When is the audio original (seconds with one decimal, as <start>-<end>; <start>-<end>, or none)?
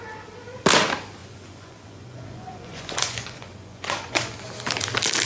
0.0-1.2; 4.4-5.3